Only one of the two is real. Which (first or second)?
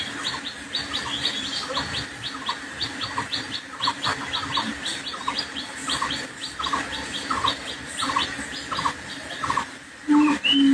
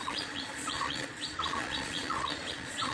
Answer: first